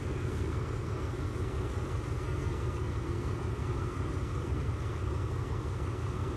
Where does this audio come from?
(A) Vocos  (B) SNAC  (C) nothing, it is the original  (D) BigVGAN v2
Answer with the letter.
B